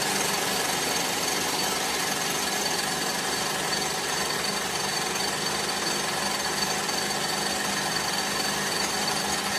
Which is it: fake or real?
real